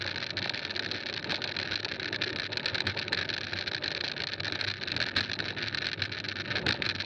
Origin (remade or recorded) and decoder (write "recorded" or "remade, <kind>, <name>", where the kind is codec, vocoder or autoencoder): recorded